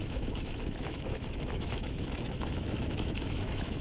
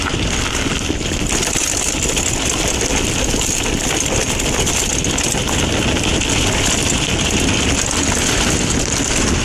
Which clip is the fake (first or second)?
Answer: first